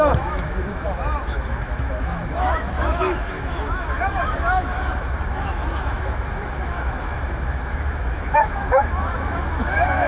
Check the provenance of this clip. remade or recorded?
remade